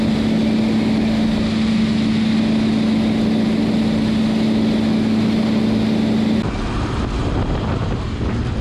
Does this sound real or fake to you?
real